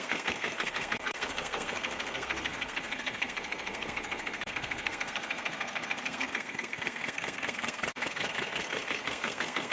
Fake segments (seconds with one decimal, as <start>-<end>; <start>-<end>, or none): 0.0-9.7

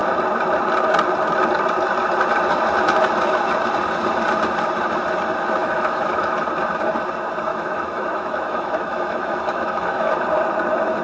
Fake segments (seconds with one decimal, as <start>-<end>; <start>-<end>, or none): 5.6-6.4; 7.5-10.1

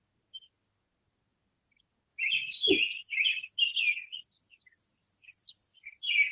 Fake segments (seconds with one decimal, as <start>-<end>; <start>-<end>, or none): 3.9-5.5

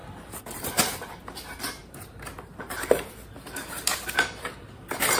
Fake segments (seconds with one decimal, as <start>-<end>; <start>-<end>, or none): 0.0-5.2

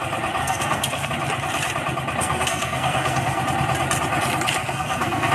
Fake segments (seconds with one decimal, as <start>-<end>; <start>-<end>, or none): 0.4-1.1; 2.2-3.4; 4.6-5.3

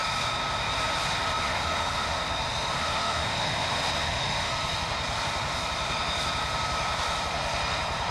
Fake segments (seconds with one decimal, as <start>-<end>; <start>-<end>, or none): 1.4-2.2; 2.8-4.5

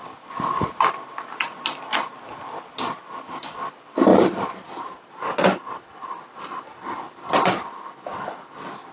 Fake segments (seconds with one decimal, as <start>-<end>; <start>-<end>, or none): 4.1-5.7

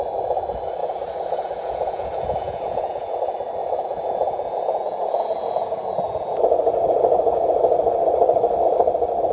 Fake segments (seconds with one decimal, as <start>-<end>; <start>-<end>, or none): 0.8-3.2; 3.6-7.9